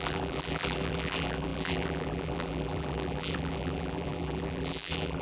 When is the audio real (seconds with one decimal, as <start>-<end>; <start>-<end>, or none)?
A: none